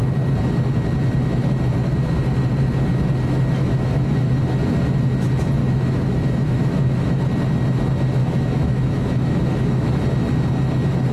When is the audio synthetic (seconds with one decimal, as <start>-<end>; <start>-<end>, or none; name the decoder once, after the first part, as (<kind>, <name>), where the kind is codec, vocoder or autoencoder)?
3.6-4.3 (autoencoder, DAC-VAE); 5.6-7.2; 8.2-10.0